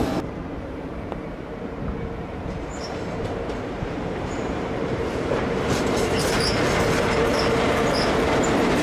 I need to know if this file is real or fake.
fake